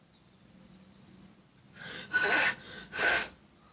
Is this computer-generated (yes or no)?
no